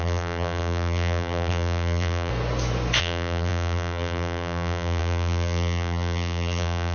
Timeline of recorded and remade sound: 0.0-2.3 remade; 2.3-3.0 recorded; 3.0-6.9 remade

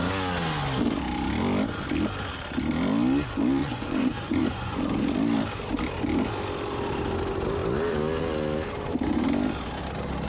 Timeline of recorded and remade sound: 0.0-3.6 recorded; 3.6-4.8 remade; 4.8-10.3 recorded

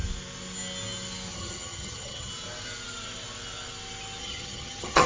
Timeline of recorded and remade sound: 0.0-1.3 recorded; 1.3-2.3 remade; 2.3-4.2 recorded; 4.2-5.1 remade

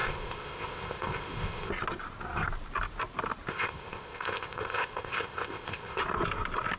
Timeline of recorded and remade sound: 0.0-1.7 remade; 1.7-3.5 recorded; 3.5-6.0 remade; 6.0-6.8 recorded

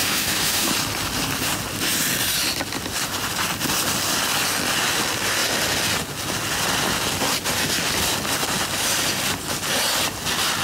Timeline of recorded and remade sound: 0.0-0.7 remade; 0.7-10.6 recorded

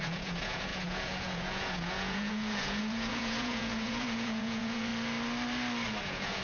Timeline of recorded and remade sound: 0.0-4.9 remade; 4.9-6.0 recorded; 6.0-6.4 remade